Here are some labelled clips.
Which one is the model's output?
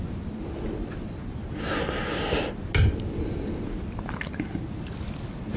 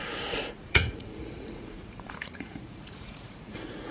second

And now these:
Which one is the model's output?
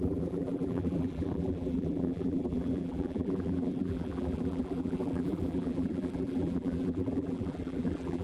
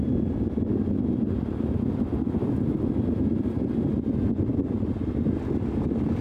first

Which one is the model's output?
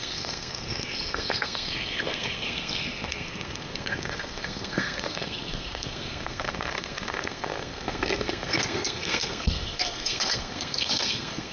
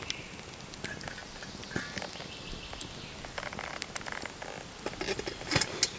first